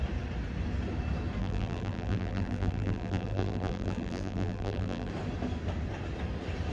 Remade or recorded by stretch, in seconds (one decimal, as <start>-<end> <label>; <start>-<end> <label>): 0.0-1.4 recorded; 1.4-5.1 remade; 5.1-6.7 recorded